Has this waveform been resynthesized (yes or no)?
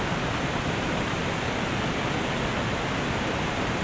no